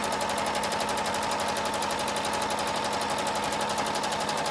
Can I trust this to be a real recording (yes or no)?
yes